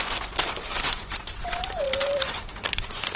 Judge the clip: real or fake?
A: fake